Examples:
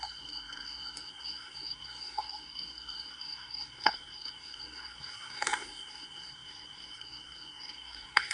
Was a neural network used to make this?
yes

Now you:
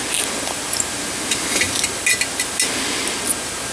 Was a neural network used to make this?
no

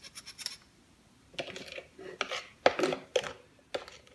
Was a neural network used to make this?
no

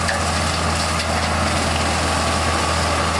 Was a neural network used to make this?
no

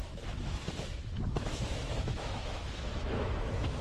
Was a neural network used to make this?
yes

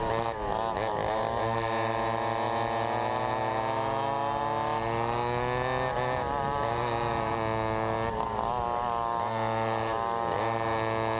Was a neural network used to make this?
no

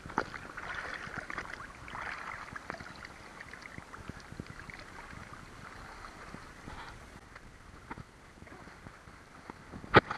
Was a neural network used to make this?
no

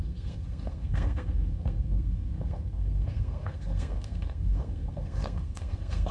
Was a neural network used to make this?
yes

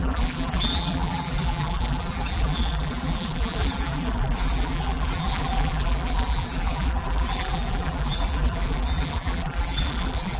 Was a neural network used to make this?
yes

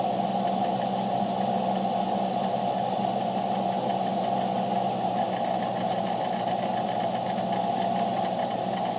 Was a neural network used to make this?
no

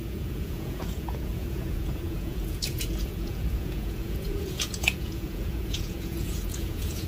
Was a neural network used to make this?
yes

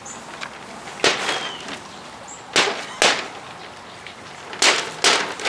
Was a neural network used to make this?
no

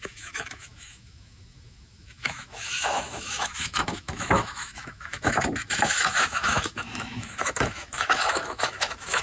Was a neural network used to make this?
yes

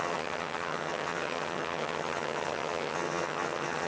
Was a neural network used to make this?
yes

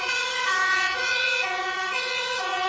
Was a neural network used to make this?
yes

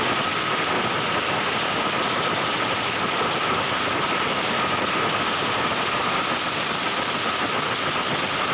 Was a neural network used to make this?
no